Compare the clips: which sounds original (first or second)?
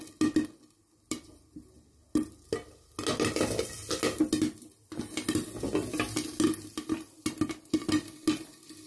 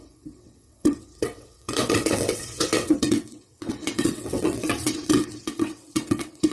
first